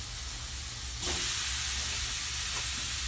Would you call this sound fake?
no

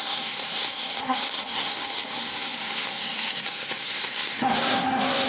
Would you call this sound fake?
yes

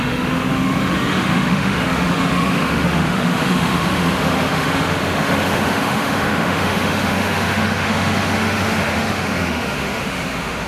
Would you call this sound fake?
yes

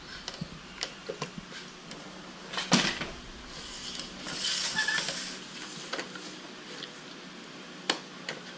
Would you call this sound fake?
no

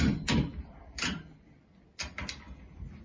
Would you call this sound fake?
no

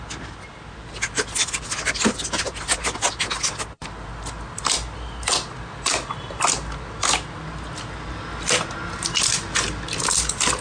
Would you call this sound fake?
no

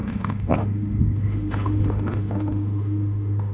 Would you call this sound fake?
yes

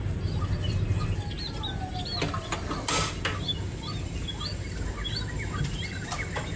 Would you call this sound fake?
no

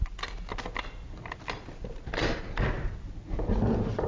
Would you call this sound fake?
no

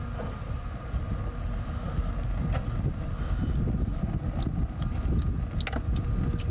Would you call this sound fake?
no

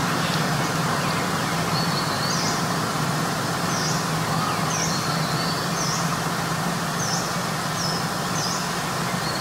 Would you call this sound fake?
no